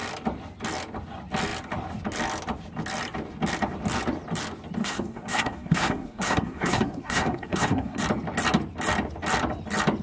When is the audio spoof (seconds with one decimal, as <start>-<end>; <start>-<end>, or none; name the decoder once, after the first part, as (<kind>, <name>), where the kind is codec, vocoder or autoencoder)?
4.8-8.0 (codec, SNAC)